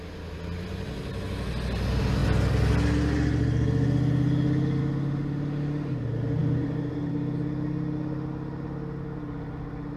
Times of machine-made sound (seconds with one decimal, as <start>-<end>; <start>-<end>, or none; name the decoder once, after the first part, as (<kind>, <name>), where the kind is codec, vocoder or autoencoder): none